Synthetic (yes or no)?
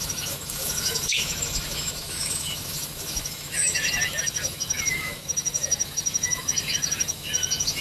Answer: yes